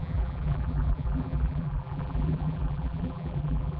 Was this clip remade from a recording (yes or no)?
yes